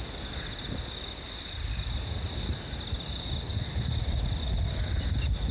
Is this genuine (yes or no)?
yes